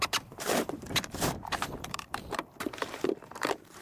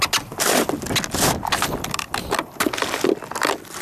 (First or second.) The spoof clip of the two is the first